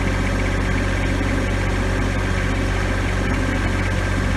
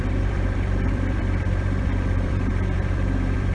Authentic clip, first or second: first